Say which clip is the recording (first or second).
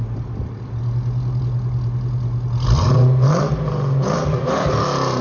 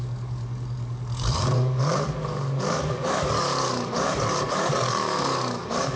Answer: first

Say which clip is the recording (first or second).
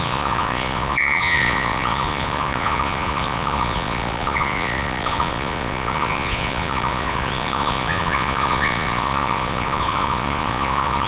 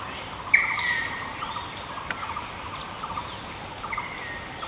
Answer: second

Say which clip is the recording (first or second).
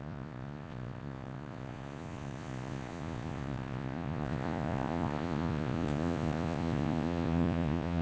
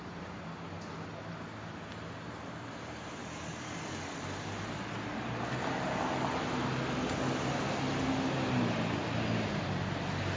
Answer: second